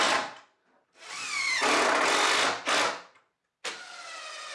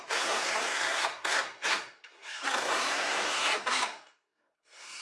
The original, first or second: first